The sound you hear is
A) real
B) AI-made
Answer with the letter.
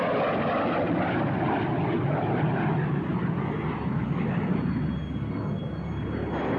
A